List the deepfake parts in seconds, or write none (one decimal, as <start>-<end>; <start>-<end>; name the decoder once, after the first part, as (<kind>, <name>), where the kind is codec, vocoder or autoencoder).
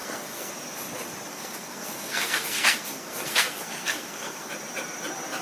0.0-0.5 (codec, SNAC); 1.3-4.5